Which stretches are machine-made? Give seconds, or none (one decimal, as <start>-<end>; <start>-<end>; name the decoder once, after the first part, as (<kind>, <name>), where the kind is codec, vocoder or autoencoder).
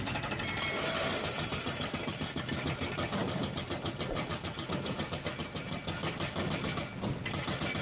none